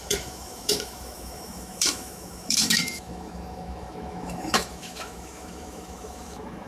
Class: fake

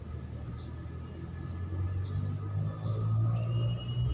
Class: real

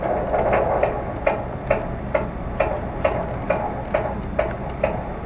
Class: real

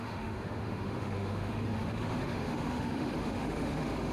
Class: fake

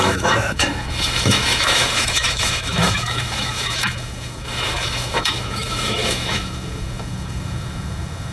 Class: fake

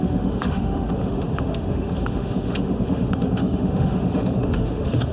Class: fake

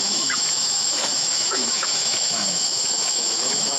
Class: fake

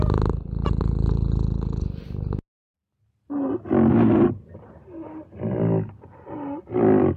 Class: real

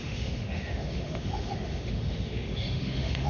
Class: fake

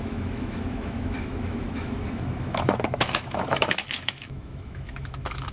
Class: fake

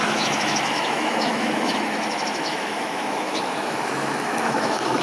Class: fake